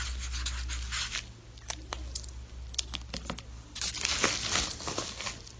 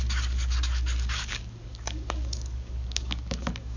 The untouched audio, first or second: first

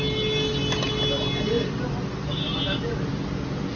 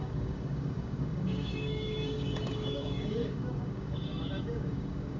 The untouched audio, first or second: first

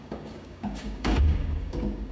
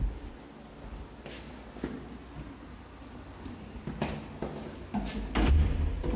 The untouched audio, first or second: second